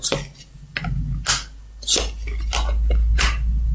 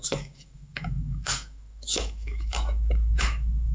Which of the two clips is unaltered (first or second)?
first